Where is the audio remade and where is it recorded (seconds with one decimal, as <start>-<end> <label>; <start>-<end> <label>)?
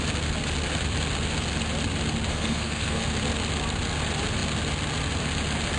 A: 0.0-2.3 recorded; 2.3-3.1 remade; 3.1-5.8 recorded